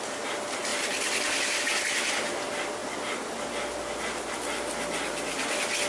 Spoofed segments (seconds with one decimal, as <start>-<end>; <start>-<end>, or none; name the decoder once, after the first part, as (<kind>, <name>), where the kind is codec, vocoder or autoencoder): none